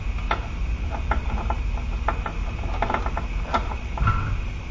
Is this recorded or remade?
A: recorded